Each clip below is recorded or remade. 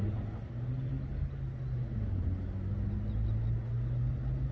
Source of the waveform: recorded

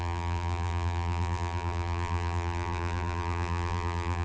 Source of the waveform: remade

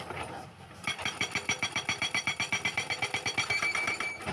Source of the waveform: remade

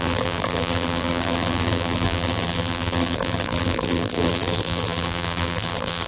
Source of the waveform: remade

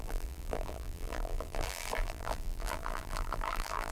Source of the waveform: remade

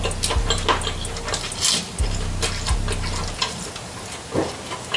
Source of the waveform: recorded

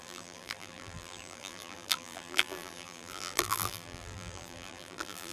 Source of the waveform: remade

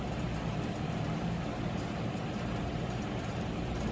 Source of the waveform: remade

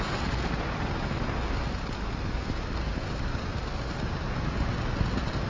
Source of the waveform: recorded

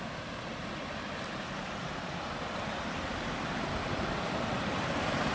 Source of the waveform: recorded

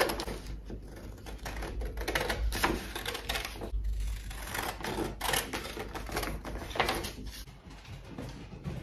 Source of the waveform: recorded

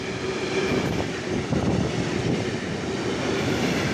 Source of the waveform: remade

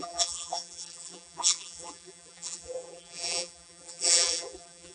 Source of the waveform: remade